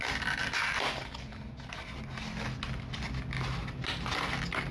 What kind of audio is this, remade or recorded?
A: recorded